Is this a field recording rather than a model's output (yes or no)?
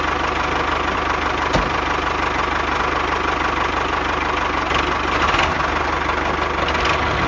yes